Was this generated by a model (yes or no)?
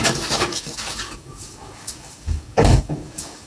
yes